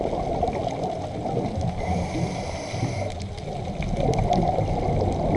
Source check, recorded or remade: recorded